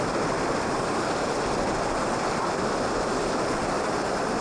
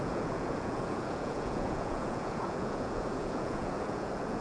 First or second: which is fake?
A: second